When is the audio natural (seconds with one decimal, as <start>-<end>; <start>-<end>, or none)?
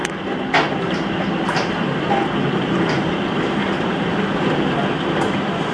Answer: 0.0-5.7